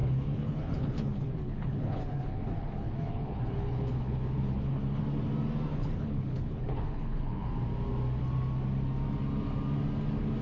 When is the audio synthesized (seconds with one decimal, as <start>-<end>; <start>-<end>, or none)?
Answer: 0.0-5.0; 5.7-7.5